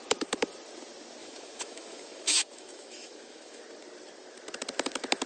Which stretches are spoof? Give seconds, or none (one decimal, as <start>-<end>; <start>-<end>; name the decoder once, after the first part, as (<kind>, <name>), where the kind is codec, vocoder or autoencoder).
1.2-3.6 (autoencoder, DAC-VAE)